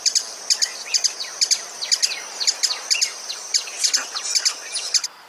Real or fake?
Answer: real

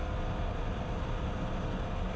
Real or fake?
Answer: real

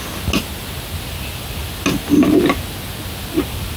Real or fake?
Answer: real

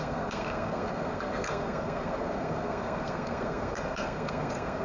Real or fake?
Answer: fake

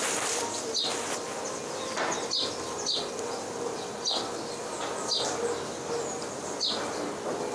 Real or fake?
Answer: real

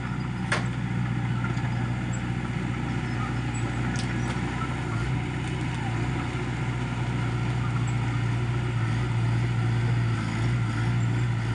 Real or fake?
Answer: real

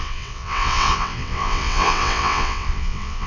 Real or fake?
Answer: fake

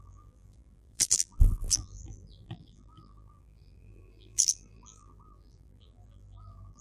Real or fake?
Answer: fake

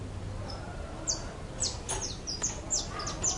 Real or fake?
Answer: real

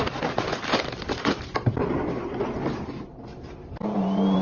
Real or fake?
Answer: real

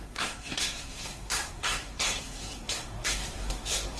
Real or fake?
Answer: fake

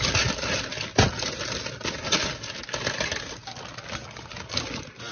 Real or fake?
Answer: real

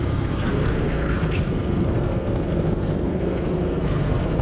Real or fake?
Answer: fake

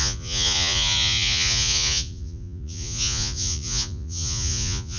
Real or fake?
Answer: fake